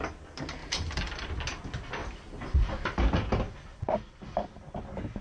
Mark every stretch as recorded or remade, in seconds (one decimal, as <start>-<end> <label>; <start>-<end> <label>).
0.0-0.6 recorded; 0.6-1.3 remade; 1.3-2.0 recorded; 2.0-3.0 remade; 3.0-3.7 recorded; 3.7-4.8 remade; 4.8-5.2 recorded